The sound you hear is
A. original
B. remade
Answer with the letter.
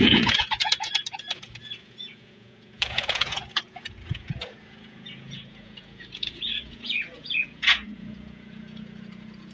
B